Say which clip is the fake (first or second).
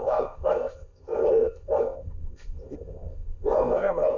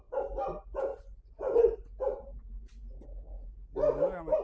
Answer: first